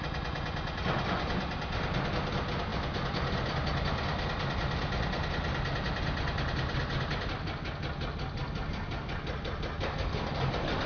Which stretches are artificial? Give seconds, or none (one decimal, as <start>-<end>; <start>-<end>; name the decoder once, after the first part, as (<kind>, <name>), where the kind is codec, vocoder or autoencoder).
none